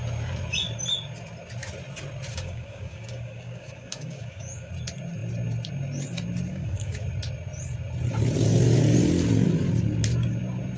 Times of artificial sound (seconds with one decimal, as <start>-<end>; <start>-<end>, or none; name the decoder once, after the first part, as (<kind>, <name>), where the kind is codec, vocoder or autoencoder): 2.3-4.7 (codec, DAC); 6.5-7.0